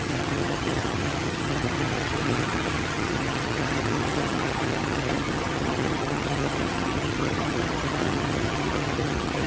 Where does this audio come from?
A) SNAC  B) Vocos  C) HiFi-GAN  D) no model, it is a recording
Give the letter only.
C